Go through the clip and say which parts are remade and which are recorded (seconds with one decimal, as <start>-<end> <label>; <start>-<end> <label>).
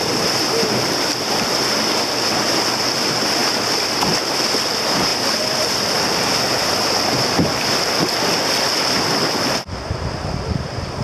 0.0-5.1 recorded; 5.1-7.3 remade; 7.3-11.0 recorded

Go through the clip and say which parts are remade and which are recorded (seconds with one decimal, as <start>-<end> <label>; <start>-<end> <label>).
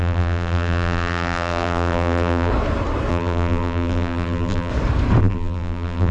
0.0-2.5 remade; 2.5-3.1 recorded; 3.1-4.7 remade; 4.7-5.2 recorded; 5.2-6.1 remade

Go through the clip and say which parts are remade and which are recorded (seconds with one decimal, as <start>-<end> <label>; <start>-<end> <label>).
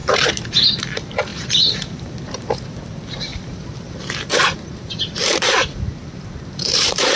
0.0-0.5 remade; 0.5-1.3 recorded; 1.3-2.8 remade; 2.8-3.3 recorded; 3.3-7.2 remade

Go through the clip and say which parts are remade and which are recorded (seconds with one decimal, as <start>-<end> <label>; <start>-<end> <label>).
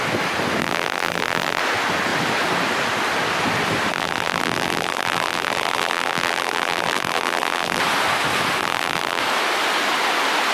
0.0-0.6 recorded; 0.6-1.6 remade; 1.6-3.9 recorded; 3.9-7.8 remade; 7.8-8.6 recorded; 8.6-9.2 remade; 9.2-10.5 recorded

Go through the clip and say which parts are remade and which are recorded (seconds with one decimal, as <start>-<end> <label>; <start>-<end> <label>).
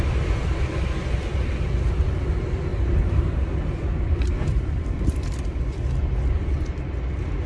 0.0-1.3 recorded; 1.3-2.0 remade; 2.0-2.7 recorded; 2.7-5.8 remade; 5.8-7.5 recorded